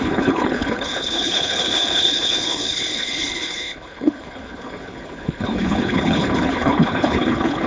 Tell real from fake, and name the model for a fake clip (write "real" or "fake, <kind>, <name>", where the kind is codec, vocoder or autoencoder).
fake, codec, HILCodec